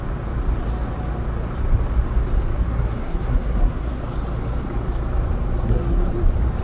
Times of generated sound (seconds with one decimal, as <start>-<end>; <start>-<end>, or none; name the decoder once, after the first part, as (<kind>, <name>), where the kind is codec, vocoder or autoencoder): 2.6-4.0 (codec, SNAC); 5.6-6.1